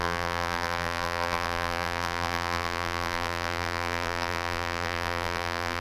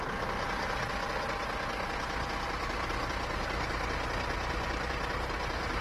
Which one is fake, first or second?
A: first